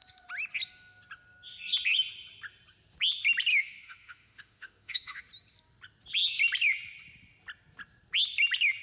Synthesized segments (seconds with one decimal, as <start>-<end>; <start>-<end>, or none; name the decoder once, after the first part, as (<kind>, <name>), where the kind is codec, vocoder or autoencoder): 3.5-5.2 (autoencoder, DAC-VAE)